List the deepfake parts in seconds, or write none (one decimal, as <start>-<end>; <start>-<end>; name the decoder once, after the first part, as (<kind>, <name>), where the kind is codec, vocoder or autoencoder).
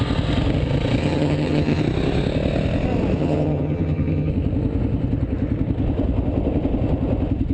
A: 1.0-1.8 (vocoder, HiFi-GAN); 3.2-4.3